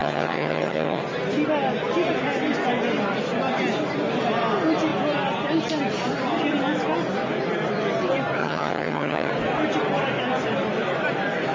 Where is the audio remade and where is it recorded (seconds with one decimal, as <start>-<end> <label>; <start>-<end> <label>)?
0.0-1.0 remade; 1.0-8.4 recorded; 8.4-9.3 remade; 9.3-11.5 recorded